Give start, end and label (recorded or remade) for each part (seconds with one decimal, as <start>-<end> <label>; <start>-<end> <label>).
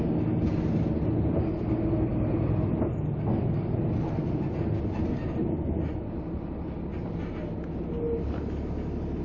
0.0-9.2 recorded